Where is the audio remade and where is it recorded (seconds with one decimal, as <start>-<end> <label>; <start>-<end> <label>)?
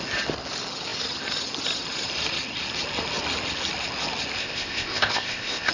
0.0-4.4 recorded; 4.4-5.7 remade